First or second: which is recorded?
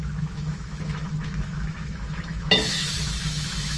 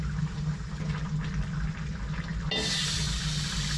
second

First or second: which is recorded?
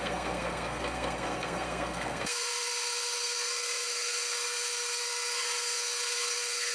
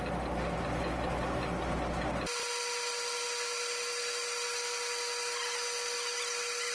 second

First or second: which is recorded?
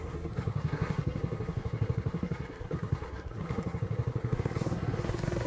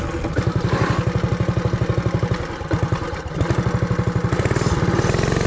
second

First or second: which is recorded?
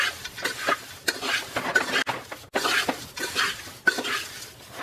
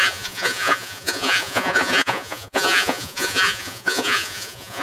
first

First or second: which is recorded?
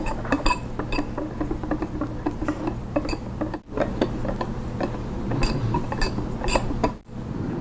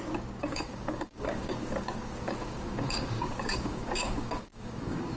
first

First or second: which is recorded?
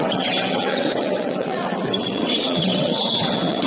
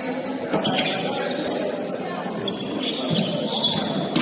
second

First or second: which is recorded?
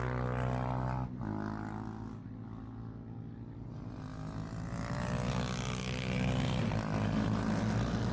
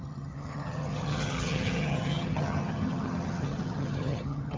first